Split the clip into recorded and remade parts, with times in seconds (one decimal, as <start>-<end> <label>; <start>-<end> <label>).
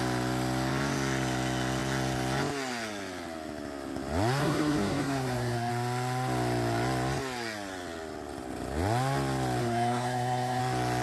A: 0.0-4.4 recorded; 4.4-5.7 remade; 5.7-9.6 recorded; 9.6-10.6 remade; 10.6-11.0 recorded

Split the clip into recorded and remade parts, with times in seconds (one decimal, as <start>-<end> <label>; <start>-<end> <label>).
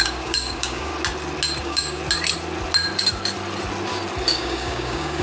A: 0.0-0.9 remade; 0.9-1.6 recorded; 1.6-2.0 remade; 2.0-4.3 recorded; 4.3-5.2 remade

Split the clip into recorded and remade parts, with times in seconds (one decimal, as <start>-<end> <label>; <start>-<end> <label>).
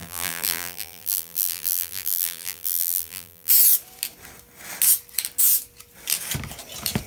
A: 0.0-3.5 remade; 3.5-7.1 recorded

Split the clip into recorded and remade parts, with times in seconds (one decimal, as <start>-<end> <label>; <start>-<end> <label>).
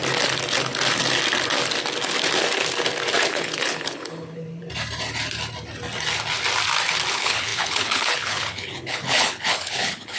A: 0.0-3.3 recorded; 3.3-4.6 remade; 4.6-7.1 recorded; 7.1-10.2 remade